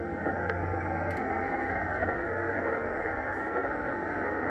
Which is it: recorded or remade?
remade